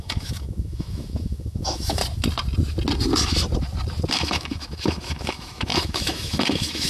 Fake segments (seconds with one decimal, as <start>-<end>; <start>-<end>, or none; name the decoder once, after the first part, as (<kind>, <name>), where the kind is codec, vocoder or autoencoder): 0.0-2.0 (autoencoder, DAC-VAE); 4.1-6.9